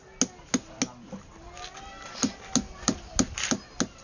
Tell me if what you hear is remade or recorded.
recorded